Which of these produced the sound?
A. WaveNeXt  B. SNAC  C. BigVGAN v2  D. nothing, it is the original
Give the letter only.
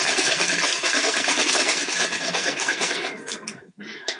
B